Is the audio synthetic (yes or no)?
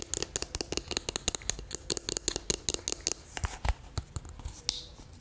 no